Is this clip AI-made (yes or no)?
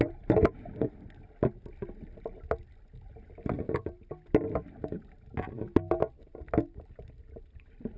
no